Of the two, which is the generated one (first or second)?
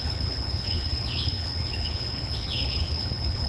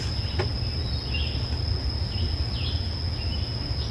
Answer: first